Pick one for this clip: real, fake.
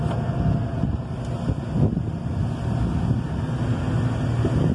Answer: real